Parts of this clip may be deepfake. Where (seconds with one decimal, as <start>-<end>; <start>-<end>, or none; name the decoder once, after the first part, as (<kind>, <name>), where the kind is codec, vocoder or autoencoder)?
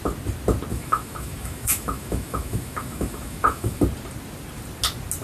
0.7-3.8 (autoencoder, DAC-VAE)